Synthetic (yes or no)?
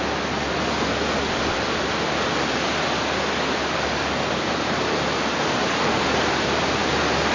no